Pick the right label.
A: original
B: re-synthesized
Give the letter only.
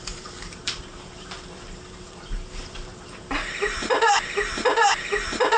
B